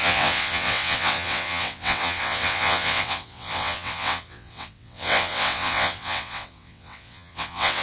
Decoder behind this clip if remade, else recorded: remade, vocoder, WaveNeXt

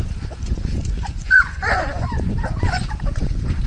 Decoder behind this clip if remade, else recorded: remade, vocoder, Vocos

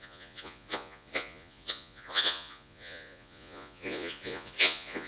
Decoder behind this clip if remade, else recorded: remade, vocoder, Vocos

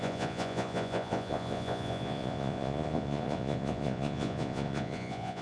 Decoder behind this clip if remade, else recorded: remade, vocoder, Vocos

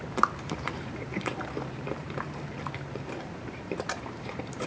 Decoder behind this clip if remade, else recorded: remade, vocoder, BigVGAN v2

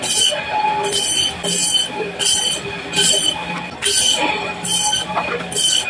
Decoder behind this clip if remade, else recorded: recorded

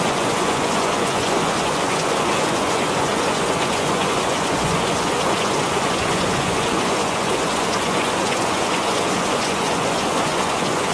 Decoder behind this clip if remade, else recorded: remade, vocoder, Vocos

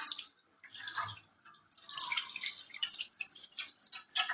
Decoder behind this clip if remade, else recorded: remade, vocoder, BigVGAN v2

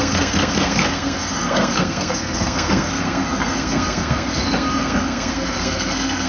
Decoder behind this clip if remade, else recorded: remade, codec, SNAC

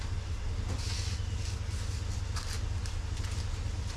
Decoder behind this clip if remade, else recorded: recorded